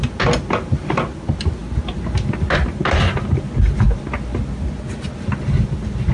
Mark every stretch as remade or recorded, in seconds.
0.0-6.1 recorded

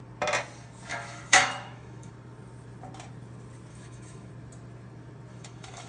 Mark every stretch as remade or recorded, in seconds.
0.0-0.9 recorded; 0.9-2.1 remade; 2.1-3.7 recorded; 3.7-4.3 remade; 4.3-5.3 recorded; 5.3-5.9 remade

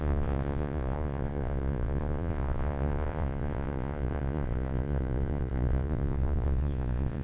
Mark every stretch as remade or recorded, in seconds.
0.0-7.2 remade

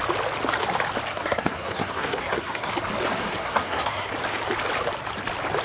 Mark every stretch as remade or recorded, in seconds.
0.0-1.1 recorded; 1.1-2.7 remade; 2.7-3.2 recorded; 3.2-4.1 remade; 4.1-5.6 recorded

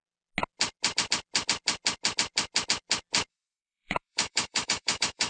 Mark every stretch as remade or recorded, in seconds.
0.0-3.3 recorded; 3.3-5.3 remade

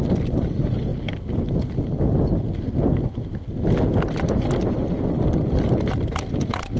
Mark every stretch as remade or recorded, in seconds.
0.0-6.8 recorded

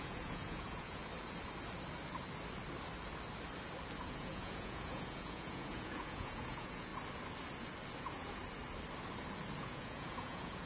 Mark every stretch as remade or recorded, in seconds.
0.0-1.0 remade; 1.0-4.0 recorded; 4.0-6.9 remade; 6.9-8.0 recorded; 8.0-8.4 remade; 8.4-9.6 recorded; 9.6-10.7 remade

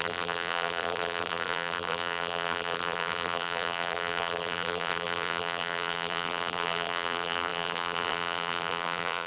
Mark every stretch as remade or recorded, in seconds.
0.0-9.3 remade